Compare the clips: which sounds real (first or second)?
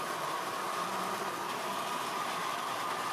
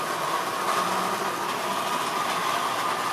second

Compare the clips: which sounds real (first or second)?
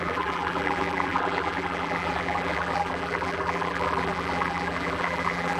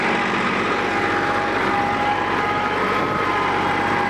second